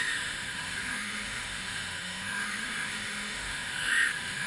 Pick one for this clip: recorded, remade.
remade